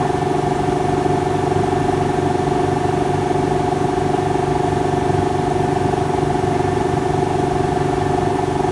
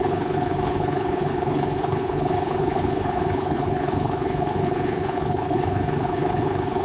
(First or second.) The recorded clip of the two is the first